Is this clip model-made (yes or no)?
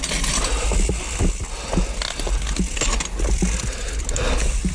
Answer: no